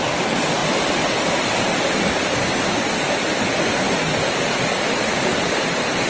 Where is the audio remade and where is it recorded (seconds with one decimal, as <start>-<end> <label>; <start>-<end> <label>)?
0.0-6.1 recorded